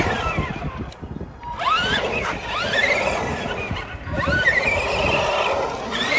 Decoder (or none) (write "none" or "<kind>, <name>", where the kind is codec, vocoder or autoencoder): none